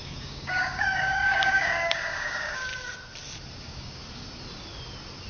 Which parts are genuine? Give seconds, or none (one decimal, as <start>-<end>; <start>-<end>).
2.7-3.6; 4.0-5.3